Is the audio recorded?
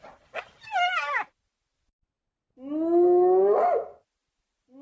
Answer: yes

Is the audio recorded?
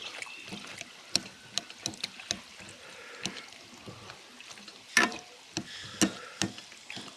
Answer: yes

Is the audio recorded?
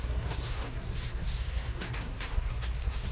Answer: no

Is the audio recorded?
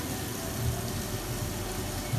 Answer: yes